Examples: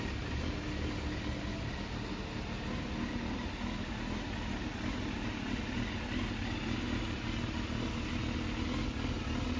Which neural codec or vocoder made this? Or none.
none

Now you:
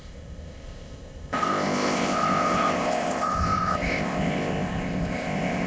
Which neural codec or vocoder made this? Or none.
codec, ZipCodec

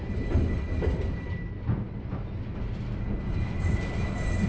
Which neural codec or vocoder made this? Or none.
none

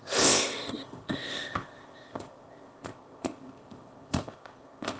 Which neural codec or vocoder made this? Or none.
codec, ZipCodec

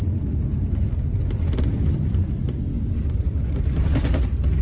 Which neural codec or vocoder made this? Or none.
none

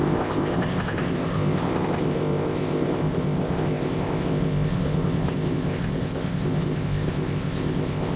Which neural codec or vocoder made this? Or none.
codec, ZipCodec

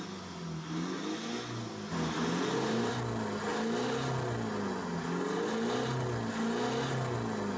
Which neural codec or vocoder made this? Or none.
none